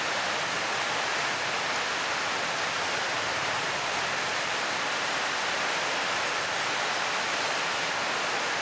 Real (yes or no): yes